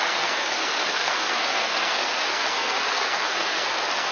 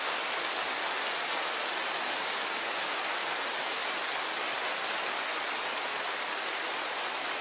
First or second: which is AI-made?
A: first